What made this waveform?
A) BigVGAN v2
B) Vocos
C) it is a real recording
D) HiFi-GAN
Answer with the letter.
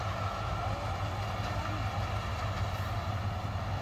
C